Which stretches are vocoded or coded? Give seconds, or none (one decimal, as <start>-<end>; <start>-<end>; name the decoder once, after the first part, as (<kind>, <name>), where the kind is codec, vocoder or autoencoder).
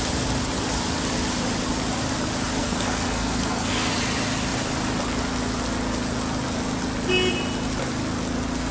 2.6-3.9 (codec, SNAC)